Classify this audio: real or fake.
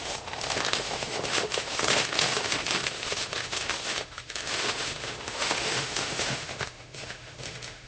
fake